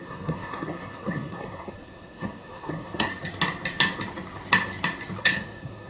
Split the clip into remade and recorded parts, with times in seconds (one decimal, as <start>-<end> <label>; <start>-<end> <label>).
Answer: 0.0-3.1 remade; 3.1-5.2 recorded; 5.2-5.9 remade